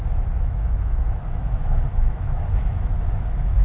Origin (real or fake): fake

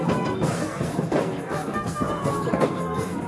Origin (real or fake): fake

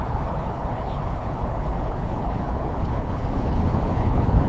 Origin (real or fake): fake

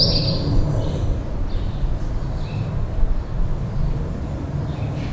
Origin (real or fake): real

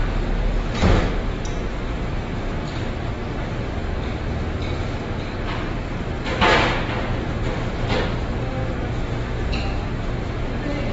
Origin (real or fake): real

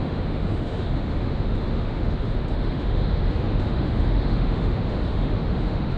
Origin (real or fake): fake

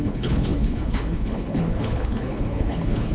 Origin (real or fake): fake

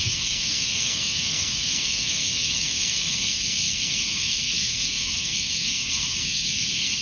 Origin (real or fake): fake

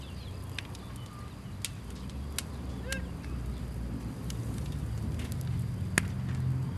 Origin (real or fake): real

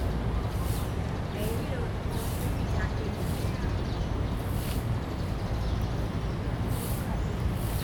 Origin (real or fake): real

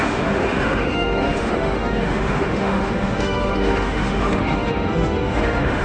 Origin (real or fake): fake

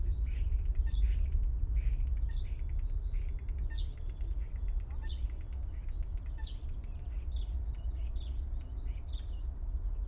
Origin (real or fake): real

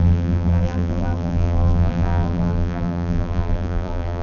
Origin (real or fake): fake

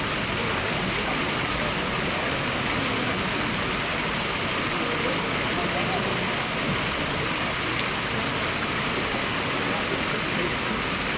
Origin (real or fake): real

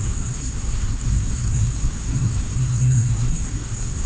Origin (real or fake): fake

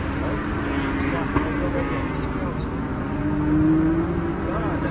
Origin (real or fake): real